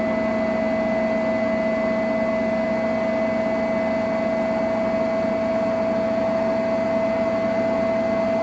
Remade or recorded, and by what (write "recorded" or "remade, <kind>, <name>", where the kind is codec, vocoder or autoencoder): recorded